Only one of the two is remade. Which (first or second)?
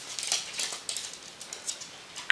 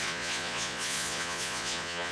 second